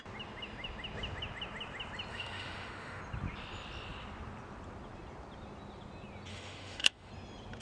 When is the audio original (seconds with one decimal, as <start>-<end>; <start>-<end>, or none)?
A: 0.0-2.1; 3.0-6.3; 7.1-7.6